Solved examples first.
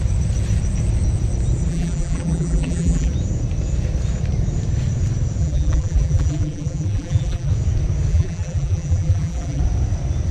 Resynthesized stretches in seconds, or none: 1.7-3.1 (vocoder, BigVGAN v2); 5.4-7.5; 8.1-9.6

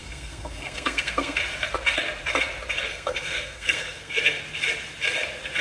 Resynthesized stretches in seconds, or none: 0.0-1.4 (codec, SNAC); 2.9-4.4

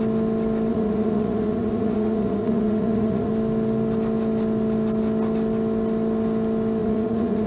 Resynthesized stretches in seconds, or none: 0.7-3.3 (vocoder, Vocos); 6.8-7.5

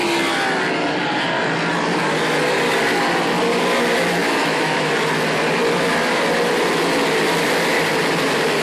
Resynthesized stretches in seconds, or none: 4.2-4.9 (autoencoder, DAC-VAE)

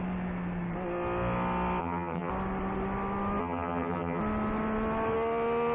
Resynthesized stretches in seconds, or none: 1.8-2.3 (vocoder, HiFi-GAN); 3.4-4.2